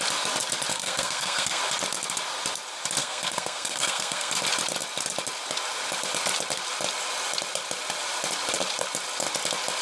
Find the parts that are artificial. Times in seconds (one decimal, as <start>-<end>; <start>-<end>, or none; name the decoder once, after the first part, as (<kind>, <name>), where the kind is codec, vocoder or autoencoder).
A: 0.7-1.6 (codec, SNAC); 3.0-4.3